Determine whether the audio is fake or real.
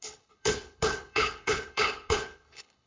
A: fake